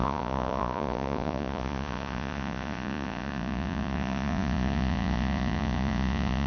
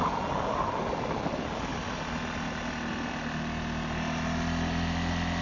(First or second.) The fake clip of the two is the first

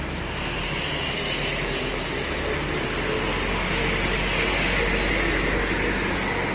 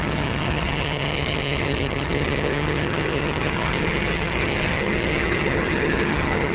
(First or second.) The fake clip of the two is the second